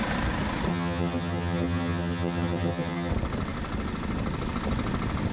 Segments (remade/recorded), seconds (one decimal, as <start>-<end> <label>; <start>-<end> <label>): 0.0-0.7 recorded; 0.7-3.1 remade; 3.1-5.3 recorded